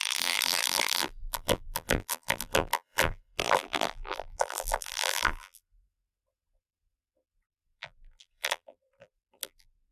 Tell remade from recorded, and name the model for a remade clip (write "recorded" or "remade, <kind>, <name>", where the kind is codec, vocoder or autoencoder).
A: remade, vocoder, BigVGAN v2